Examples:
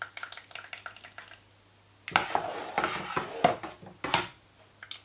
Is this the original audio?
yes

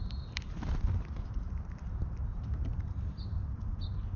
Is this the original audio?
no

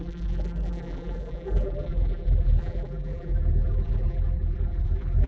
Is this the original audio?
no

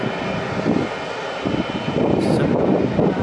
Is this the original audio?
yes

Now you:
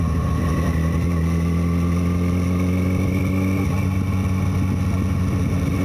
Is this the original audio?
yes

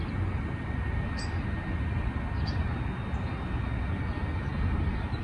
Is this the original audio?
yes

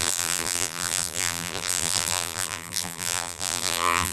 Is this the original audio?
no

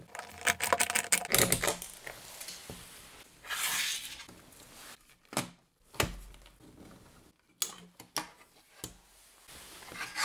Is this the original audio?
yes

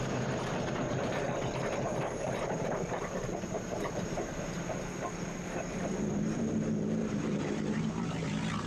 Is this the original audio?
no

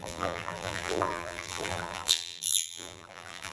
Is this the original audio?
no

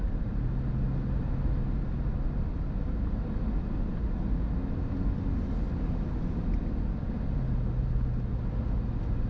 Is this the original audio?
yes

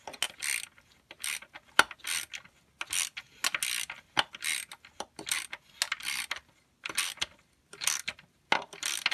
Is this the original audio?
yes